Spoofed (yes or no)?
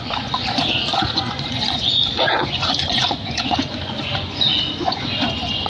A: yes